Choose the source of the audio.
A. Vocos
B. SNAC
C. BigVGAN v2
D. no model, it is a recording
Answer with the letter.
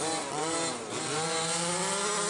D